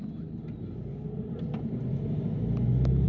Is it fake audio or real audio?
real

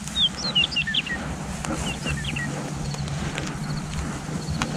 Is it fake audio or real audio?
real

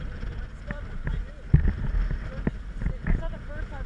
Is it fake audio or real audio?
real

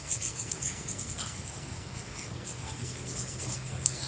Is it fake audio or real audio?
fake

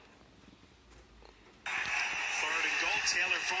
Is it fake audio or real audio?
real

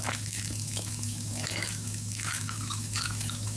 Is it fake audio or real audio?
fake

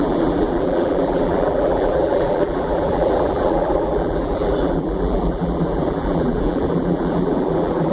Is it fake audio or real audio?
fake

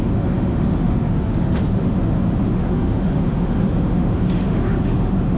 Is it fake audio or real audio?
fake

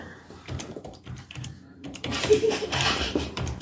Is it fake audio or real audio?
fake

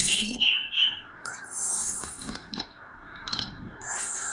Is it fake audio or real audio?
fake